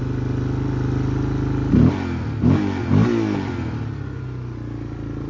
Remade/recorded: recorded